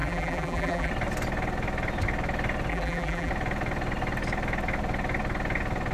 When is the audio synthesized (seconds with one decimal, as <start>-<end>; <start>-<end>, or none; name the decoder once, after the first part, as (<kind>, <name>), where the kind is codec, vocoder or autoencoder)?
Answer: 0.0-0.9 (vocoder, BigVGAN v2); 2.7-3.3